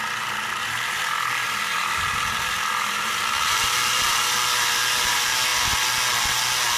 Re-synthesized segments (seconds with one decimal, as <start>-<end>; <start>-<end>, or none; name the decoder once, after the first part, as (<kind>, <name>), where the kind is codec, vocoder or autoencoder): 1.8-5.1 (vocoder, BigVGAN v2)